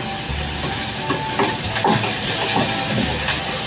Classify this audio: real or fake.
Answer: real